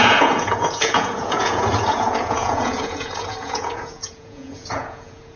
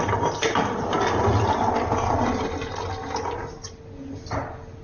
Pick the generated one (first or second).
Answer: first